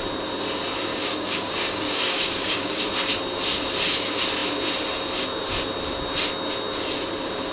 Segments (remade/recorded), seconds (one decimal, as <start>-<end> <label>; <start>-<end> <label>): 0.0-0.9 recorded; 0.9-2.9 remade; 2.9-7.5 recorded

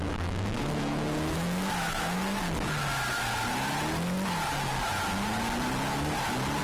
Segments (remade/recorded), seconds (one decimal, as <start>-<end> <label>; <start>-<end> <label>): 0.0-2.4 remade; 2.4-6.6 recorded

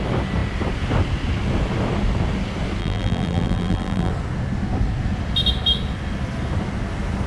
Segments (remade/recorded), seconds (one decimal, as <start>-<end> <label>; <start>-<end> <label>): 0.0-2.8 recorded; 2.8-4.1 remade; 4.1-7.3 recorded

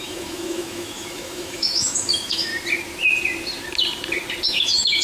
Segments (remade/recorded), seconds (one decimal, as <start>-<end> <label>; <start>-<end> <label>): 0.0-2.5 remade; 2.5-4.5 recorded; 4.5-5.0 remade

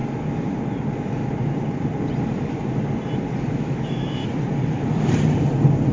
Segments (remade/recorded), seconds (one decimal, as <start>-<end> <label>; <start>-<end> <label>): 0.0-3.5 recorded; 3.5-4.2 remade; 4.2-5.9 recorded